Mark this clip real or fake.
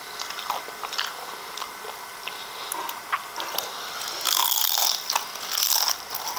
real